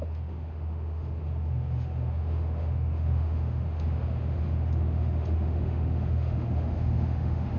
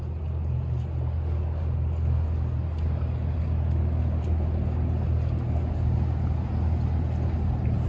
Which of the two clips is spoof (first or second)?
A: first